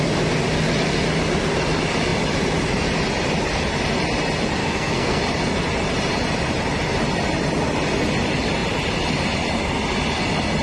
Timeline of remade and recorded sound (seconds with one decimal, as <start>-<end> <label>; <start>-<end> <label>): 0.0-4.6 recorded; 4.6-5.2 remade; 5.2-10.6 recorded

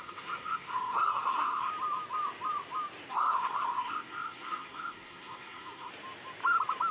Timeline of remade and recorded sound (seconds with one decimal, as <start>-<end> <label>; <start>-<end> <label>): 0.0-1.7 remade; 1.7-3.1 recorded; 3.1-5.9 remade; 5.9-6.9 recorded

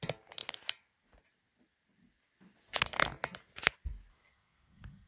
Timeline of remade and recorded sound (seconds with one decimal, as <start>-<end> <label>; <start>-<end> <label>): 0.0-4.1 recorded; 4.1-5.1 remade

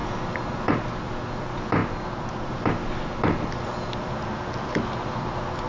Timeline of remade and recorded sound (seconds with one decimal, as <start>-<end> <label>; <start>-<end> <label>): 0.0-5.7 recorded